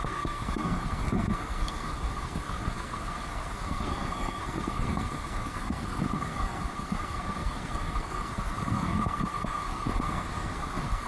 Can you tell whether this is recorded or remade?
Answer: remade